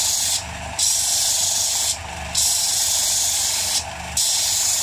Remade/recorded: recorded